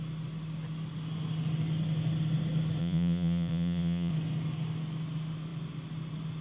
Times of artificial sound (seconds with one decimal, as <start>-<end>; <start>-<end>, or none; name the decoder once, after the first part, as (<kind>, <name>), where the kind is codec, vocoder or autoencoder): 2.8-4.1 (vocoder, Vocos)